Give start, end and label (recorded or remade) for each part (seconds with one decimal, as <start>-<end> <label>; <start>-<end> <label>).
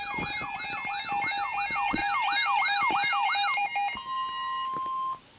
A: 0.0-5.4 recorded